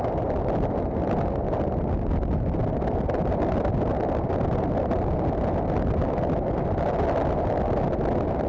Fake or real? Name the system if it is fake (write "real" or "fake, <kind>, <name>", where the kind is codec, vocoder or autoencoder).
real